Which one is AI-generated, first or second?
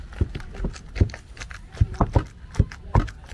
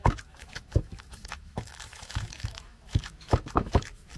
second